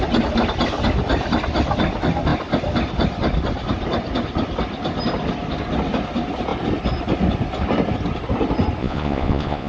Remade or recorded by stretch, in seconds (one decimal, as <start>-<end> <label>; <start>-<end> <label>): 0.0-8.8 recorded; 8.8-9.7 remade